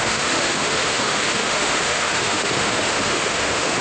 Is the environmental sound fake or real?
fake